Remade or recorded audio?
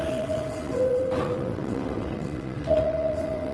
remade